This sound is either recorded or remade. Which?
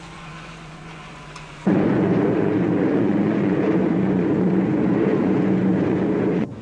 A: remade